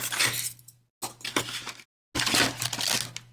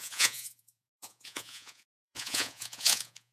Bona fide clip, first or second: first